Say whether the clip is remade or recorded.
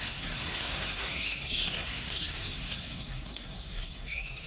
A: remade